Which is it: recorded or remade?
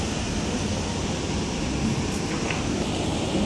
recorded